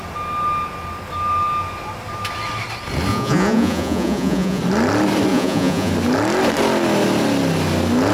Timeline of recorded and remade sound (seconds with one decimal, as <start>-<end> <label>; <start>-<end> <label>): 0.0-3.1 recorded; 3.1-4.6 remade; 4.6-5.3 recorded; 5.3-5.9 remade; 5.9-8.1 recorded